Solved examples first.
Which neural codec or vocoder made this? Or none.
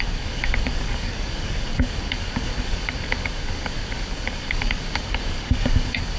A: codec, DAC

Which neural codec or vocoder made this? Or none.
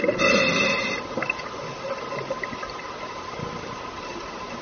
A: none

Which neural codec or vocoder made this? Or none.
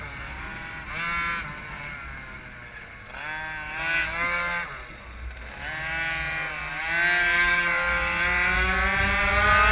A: none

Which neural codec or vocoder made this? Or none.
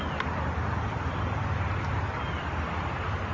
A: none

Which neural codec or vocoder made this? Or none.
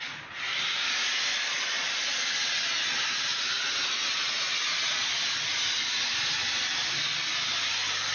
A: none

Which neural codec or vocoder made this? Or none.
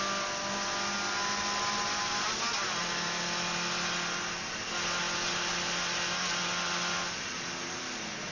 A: none